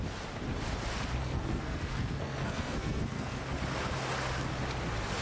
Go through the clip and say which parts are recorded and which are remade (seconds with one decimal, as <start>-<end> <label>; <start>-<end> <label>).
0.0-1.2 recorded; 1.2-3.4 remade; 3.4-5.2 recorded